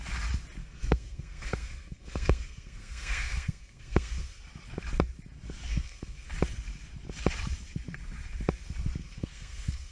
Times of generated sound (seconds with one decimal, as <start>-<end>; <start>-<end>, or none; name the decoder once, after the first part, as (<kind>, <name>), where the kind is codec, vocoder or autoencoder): 0.6-4.4 (codec, SNAC); 5.7-6.3; 9.0-9.9